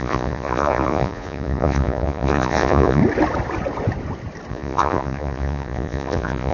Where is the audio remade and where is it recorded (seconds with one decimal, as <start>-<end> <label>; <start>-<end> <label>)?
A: 0.0-3.0 remade; 3.0-4.5 recorded; 4.5-6.5 remade